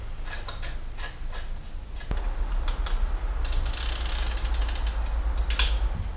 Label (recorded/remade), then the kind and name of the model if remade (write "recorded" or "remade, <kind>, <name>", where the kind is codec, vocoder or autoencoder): recorded